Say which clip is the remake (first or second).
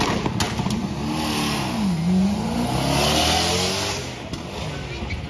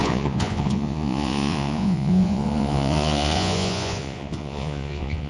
second